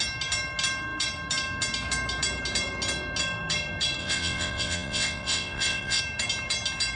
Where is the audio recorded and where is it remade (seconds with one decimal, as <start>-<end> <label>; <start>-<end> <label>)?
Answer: 0.0-4.0 recorded; 4.0-6.0 remade; 6.0-7.0 recorded